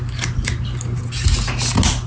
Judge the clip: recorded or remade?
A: recorded